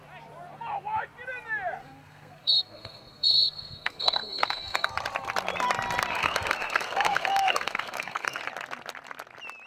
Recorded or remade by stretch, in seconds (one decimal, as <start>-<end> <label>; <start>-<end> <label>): 0.0-1.8 recorded; 1.8-4.9 remade; 4.9-6.1 recorded; 6.1-8.4 remade; 8.4-9.7 recorded